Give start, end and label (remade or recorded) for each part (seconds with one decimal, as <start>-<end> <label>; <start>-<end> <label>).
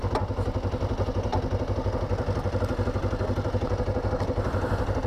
0.0-5.1 recorded